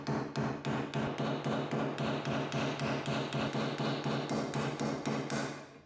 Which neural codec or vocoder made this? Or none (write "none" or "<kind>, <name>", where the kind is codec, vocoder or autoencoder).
none